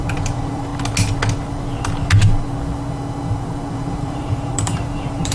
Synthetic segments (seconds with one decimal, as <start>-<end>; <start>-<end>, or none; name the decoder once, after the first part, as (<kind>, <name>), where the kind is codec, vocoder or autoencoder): 0.0-0.7 (vocoder, BigVGAN v2); 3.7-5.3